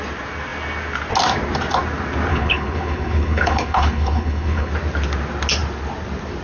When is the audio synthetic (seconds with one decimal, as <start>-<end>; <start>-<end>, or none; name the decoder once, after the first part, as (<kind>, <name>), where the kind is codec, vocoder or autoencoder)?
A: 2.3-4.7 (codec, HILCodec)